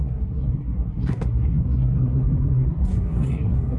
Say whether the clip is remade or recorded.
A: remade